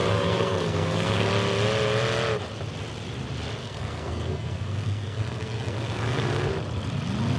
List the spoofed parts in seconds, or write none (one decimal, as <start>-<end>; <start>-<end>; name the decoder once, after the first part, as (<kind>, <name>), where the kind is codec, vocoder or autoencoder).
0.0-1.3 (codec, SNAC); 3.6-6.5